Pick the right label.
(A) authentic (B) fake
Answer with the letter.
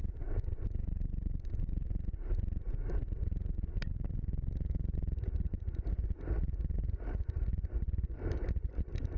B